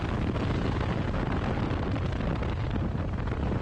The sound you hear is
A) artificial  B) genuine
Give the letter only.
B